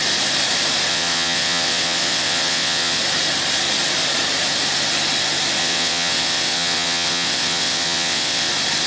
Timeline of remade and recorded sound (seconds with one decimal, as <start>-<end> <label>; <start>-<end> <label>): 0.0-0.9 recorded; 0.9-3.0 remade; 3.0-5.6 recorded; 5.6-8.5 remade; 8.5-8.9 recorded

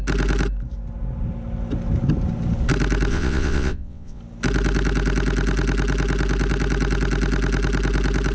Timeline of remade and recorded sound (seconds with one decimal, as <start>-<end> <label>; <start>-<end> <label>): 0.0-3.1 recorded; 3.1-4.2 remade; 4.2-8.3 recorded